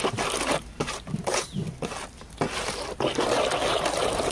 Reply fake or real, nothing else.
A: real